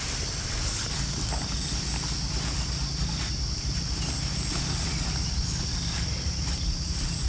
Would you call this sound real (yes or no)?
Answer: yes